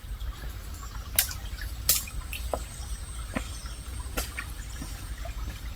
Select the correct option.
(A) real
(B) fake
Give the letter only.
A